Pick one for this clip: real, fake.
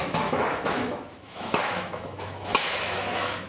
fake